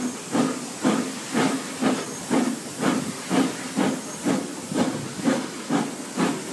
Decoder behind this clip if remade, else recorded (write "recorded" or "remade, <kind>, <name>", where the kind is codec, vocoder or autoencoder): recorded